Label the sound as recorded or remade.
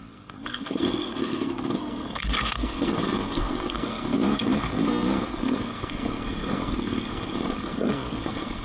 remade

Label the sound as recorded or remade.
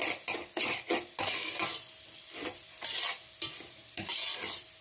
recorded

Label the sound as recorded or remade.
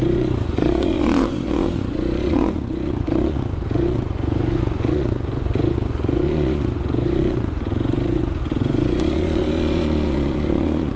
remade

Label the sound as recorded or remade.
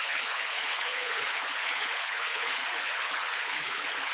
remade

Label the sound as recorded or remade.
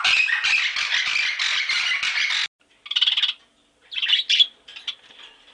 recorded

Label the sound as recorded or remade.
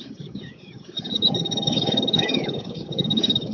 remade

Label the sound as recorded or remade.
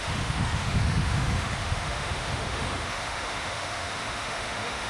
remade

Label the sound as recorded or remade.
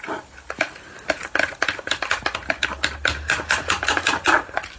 recorded